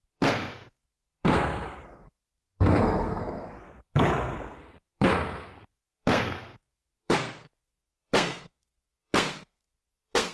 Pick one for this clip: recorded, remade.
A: remade